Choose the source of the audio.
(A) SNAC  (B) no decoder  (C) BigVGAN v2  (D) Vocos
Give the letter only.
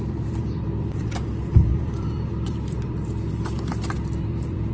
C